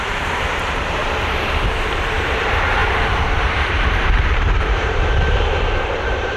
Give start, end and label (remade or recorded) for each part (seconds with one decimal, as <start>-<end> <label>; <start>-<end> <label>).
0.0-1.0 remade; 1.0-1.9 recorded; 1.9-6.4 remade